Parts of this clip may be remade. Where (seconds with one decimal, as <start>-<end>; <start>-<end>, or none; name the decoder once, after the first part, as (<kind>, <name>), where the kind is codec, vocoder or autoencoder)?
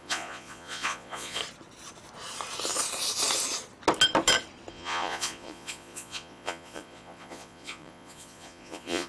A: 0.0-1.4 (vocoder, Vocos); 4.7-9.1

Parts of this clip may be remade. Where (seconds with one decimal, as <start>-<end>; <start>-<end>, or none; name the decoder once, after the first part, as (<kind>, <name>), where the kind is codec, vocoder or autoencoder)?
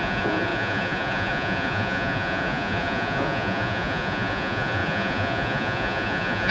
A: 0.0-6.5 (vocoder, Vocos)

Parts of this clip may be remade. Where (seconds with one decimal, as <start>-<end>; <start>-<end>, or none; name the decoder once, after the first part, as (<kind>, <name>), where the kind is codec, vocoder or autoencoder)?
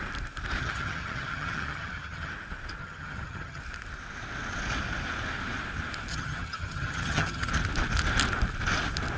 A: 0.6-2.3 (vocoder, HiFi-GAN); 2.8-3.6; 6.1-7.5